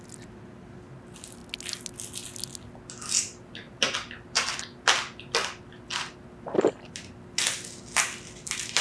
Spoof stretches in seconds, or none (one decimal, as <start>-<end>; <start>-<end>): none